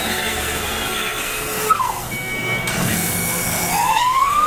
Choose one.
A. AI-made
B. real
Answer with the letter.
A